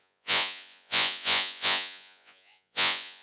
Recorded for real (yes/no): no